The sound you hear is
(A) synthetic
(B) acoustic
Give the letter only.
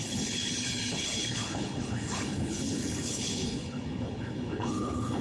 A